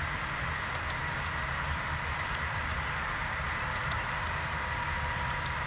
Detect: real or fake real